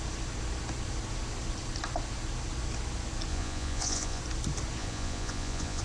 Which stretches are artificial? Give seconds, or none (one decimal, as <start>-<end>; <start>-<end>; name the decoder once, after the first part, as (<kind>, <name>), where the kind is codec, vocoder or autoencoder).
3.3-4.2 (vocoder, Vocos); 4.8-5.8